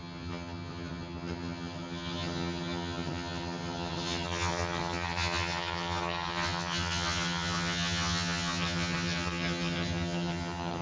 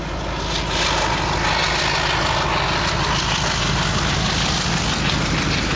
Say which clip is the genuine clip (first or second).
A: second